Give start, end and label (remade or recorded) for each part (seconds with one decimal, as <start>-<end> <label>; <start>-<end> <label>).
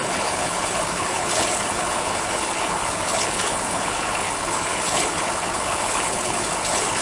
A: 0.0-7.0 remade